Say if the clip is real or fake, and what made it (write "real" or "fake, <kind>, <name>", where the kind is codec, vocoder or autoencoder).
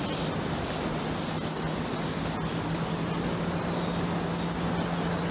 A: real